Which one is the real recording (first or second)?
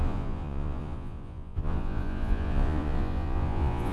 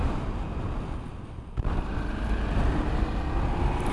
second